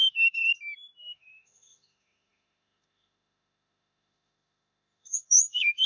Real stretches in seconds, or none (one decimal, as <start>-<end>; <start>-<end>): 0.4-1.0